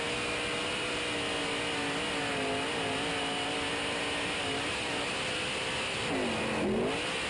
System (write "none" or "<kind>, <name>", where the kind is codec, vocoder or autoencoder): none